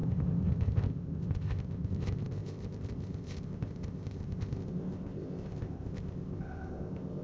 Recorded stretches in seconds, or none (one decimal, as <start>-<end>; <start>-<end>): none